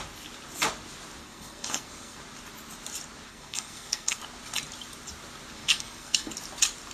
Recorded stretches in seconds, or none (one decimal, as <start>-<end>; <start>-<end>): 0.0-1.2; 2.2-3.3; 4.2-5.6; 6.3-6.9